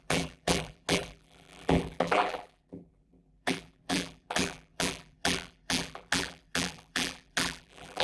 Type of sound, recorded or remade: remade